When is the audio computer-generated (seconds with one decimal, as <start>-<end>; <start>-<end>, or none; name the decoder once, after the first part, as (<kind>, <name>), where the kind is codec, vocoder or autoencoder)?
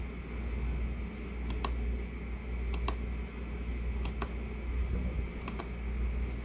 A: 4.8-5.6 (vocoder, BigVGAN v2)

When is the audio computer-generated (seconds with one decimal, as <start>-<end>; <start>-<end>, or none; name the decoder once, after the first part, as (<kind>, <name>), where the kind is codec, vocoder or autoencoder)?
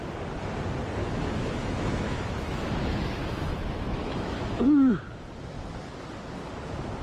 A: 1.0-4.9 (autoencoder, DAC-VAE)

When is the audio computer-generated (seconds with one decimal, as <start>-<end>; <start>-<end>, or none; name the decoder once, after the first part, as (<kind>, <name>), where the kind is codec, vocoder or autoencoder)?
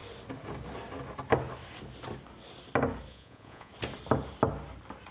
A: 3.1-3.7 (vocoder, Vocos)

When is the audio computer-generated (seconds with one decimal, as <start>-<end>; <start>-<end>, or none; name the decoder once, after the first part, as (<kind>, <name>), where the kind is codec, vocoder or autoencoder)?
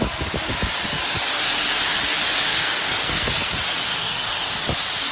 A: 2.5-3.5 (codec, SNAC); 3.9-4.5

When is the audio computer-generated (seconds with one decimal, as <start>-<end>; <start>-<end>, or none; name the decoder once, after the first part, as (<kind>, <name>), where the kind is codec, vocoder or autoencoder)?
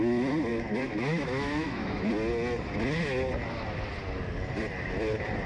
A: 0.5-2.1 (autoencoder, DAC-VAE)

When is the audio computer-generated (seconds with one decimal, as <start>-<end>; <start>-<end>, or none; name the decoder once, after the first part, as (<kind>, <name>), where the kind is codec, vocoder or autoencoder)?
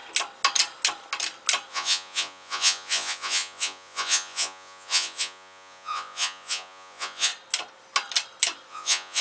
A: 1.7-7.3 (vocoder, Vocos); 8.7-9.2